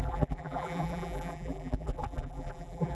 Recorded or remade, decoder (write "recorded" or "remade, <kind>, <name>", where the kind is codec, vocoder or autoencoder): remade, vocoder, BigVGAN v2